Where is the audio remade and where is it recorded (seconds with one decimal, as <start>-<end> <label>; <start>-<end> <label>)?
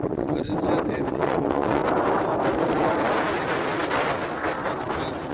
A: 0.0-0.5 remade; 0.5-1.1 recorded; 1.1-1.8 remade; 1.8-5.3 recorded